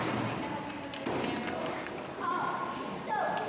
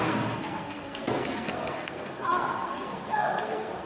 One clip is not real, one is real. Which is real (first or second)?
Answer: first